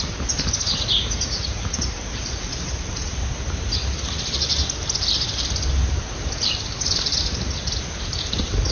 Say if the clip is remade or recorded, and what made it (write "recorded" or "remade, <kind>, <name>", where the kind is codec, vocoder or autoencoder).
remade, vocoder, BigVGAN v2